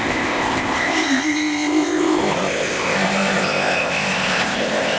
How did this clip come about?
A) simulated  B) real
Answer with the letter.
A